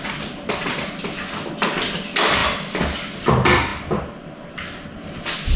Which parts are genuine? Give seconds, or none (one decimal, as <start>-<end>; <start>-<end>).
0.0-5.6